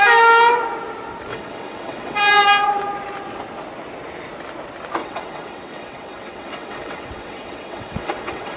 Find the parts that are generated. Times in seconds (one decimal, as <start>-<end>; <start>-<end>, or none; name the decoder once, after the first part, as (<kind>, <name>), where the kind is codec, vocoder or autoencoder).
1.3-2.2 (vocoder, WaveNeXt); 5.0-8.6

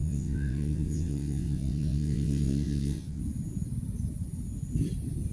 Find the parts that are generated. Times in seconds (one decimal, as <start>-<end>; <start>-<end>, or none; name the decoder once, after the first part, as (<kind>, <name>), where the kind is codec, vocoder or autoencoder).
0.0-3.2 (vocoder, WaveNeXt)

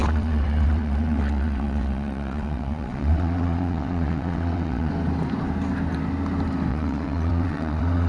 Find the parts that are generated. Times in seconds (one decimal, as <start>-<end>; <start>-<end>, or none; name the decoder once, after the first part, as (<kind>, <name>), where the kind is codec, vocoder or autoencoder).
0.0-4.9 (vocoder, WaveNeXt); 6.7-8.1

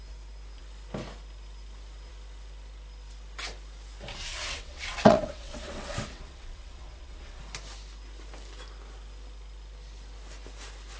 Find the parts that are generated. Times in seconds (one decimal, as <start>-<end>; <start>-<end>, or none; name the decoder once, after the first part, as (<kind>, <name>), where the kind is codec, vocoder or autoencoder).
4.1-7.4 (vocoder, WaveNeXt)

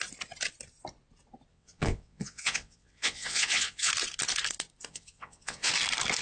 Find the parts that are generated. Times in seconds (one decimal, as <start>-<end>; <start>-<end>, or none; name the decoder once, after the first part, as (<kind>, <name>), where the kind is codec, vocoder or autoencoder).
1.5-3.9 (vocoder, WaveNeXt); 4.9-5.7

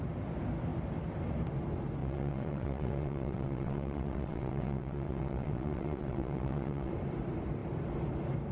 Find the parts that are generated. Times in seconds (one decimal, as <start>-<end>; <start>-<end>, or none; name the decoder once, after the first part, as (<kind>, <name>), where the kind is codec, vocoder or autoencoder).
2.0-6.9 (vocoder, WaveNeXt)